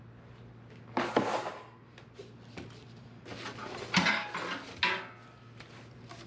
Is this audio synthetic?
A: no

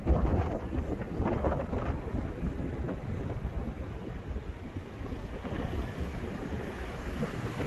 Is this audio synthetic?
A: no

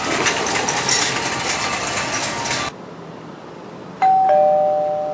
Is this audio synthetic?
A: no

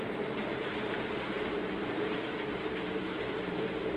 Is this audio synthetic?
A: yes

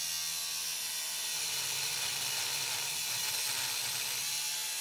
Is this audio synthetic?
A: no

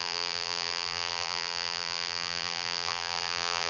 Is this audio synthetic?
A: yes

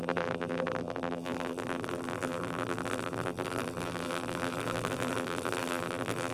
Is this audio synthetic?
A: yes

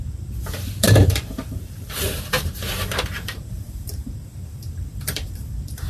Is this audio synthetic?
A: yes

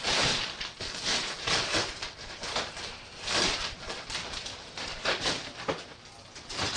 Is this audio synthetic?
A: yes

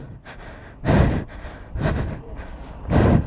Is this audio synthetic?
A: yes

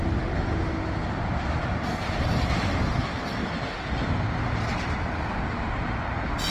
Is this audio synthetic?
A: no